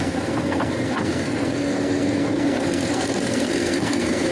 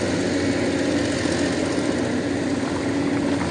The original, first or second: second